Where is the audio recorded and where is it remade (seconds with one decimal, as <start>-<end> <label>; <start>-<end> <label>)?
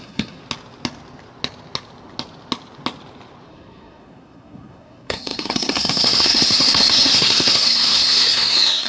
0.0-0.4 remade; 0.4-3.5 recorded; 3.5-8.9 remade